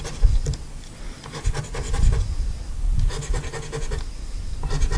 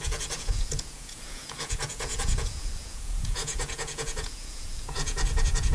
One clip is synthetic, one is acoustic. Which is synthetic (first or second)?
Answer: second